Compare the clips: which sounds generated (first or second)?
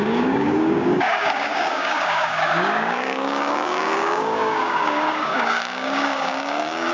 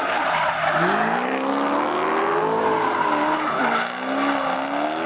first